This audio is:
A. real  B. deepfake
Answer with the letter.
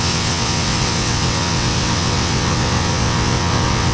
B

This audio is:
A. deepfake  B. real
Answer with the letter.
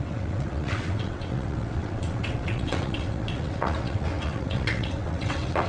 A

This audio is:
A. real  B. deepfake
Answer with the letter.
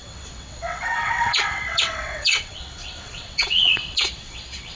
B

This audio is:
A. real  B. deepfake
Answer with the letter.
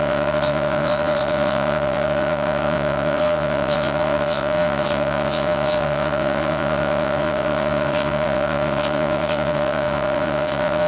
B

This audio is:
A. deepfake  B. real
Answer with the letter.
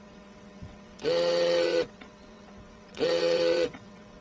A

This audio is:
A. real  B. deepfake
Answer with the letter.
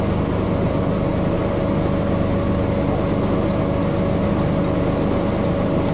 A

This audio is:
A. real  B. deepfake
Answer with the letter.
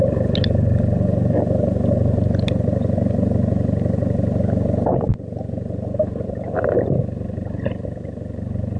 A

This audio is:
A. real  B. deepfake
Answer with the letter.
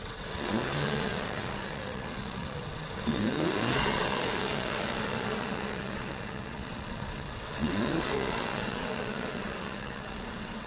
B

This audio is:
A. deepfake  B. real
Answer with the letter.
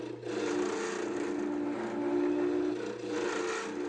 B